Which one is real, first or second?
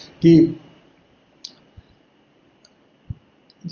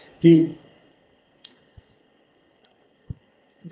first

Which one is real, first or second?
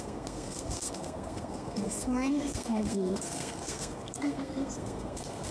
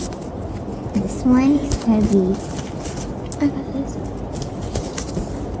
second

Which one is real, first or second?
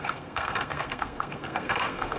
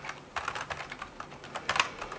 second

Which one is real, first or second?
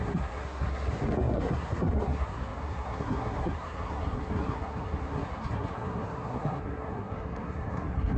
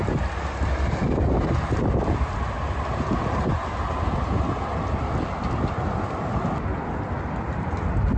second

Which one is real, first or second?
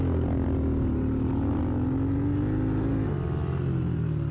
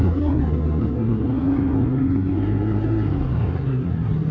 first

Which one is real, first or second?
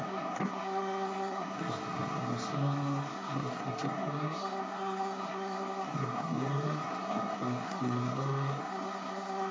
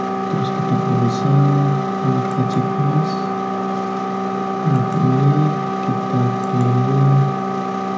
second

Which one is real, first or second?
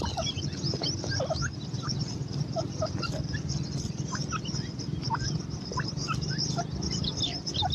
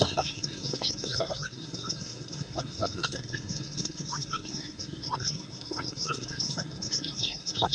first